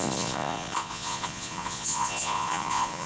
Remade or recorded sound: remade